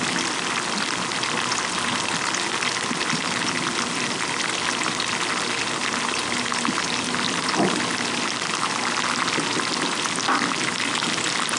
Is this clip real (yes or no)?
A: yes